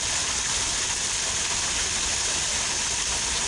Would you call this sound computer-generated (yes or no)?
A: no